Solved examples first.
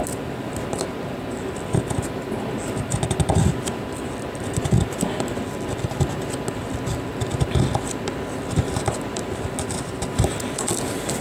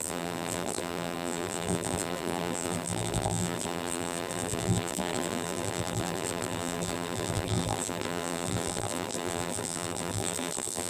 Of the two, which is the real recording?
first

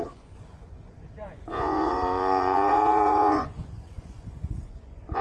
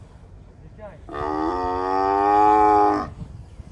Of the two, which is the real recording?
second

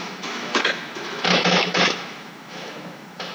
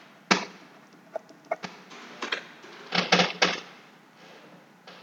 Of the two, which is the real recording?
second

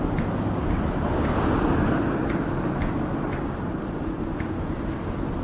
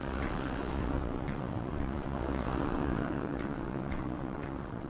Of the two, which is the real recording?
first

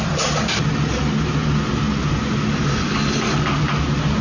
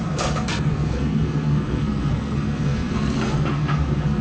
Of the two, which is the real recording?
first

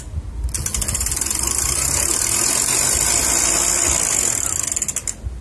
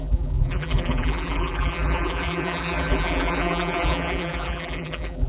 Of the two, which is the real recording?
first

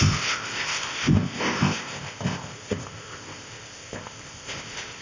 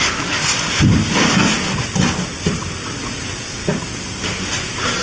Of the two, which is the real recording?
second